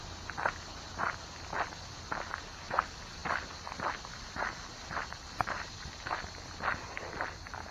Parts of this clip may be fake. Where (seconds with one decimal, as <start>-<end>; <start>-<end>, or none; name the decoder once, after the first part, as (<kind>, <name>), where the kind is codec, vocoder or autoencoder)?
none